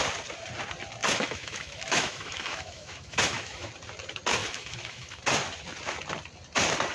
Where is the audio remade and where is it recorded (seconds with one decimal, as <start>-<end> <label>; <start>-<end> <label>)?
0.0-1.0 recorded; 1.0-3.7 remade; 3.7-4.4 recorded; 4.4-5.2 remade; 5.2-6.9 recorded